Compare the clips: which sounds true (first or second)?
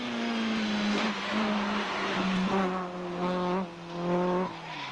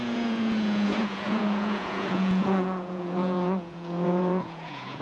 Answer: first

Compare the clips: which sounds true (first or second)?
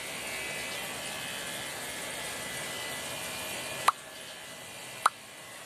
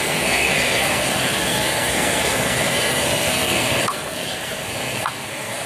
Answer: first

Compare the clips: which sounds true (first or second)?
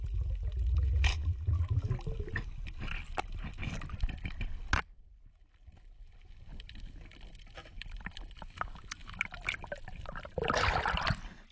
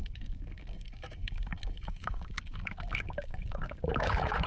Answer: first